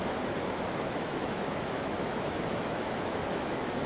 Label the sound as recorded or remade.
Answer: remade